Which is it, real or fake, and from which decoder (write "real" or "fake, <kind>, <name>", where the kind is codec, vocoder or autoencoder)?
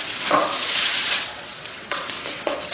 fake, vocoder, WaveNeXt